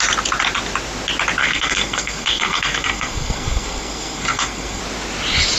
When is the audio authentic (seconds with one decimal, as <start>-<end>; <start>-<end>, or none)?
0.0-1.4; 4.8-5.6

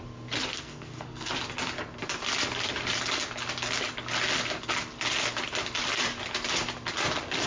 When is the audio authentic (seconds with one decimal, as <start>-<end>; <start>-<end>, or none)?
0.0-0.5; 1.3-7.5

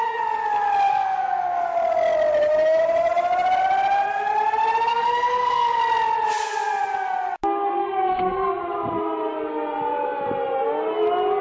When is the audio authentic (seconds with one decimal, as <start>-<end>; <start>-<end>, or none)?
0.0-0.9; 1.6-4.9; 5.8-7.8; 8.6-11.4

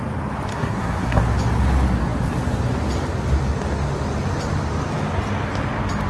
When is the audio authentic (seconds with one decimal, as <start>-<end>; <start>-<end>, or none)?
0.0-0.5; 1.2-6.1

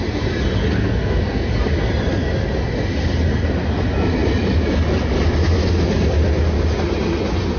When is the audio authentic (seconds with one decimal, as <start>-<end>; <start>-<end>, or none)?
0.0-0.6; 1.5-7.6

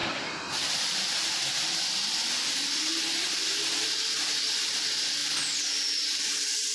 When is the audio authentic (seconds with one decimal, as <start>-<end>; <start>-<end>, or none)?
0.0-6.7

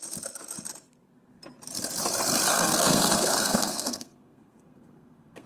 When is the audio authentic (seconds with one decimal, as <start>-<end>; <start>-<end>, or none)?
0.0-2.5

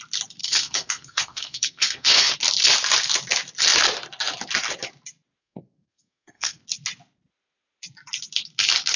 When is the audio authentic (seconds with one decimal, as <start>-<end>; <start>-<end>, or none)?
0.0-0.4; 2.3-5.4; 6.6-9.0